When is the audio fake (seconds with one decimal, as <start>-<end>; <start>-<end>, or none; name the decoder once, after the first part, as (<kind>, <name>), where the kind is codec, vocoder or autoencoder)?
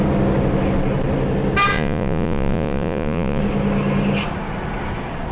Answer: 1.7-3.4 (vocoder, Vocos)